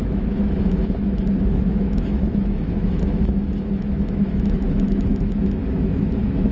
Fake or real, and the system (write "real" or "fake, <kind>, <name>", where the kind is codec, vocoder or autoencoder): fake, autoencoder, DAC-VAE